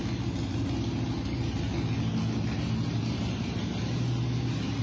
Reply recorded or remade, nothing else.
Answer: recorded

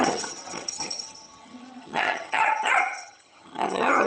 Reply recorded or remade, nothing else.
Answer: remade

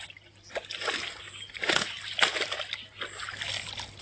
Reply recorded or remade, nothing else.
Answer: recorded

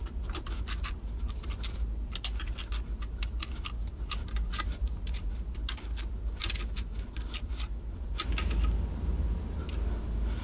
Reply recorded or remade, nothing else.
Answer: recorded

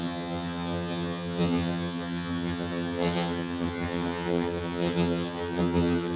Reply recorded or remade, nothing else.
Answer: remade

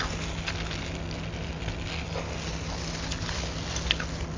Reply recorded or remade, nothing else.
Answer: recorded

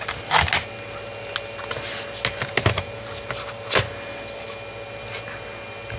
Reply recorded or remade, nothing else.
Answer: recorded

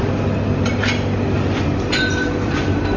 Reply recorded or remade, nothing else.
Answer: recorded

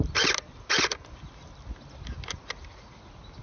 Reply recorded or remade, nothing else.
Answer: recorded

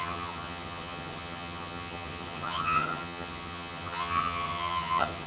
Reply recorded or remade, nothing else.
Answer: remade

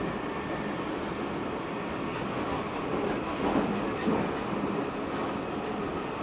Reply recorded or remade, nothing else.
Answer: recorded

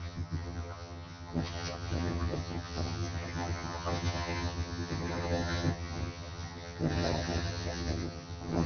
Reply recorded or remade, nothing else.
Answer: remade